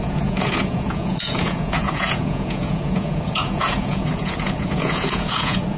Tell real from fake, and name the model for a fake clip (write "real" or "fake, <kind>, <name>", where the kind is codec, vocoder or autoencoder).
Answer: fake, vocoder, Vocos